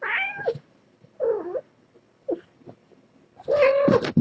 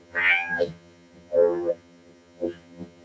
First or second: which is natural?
first